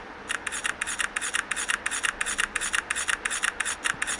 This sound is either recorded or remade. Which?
recorded